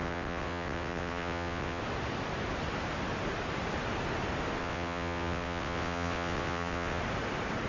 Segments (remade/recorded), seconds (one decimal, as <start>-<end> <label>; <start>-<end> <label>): 0.0-1.8 remade; 1.8-4.6 recorded; 4.6-7.0 remade; 7.0-7.7 recorded